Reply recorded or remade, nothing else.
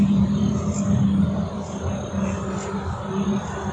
recorded